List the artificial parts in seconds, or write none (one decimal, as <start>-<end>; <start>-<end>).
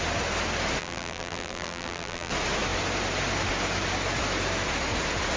0.8-2.3